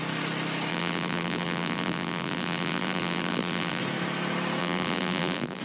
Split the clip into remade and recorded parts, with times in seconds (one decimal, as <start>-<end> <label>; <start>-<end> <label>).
0.0-0.7 recorded; 0.7-3.8 remade; 3.8-4.6 recorded; 4.6-5.6 remade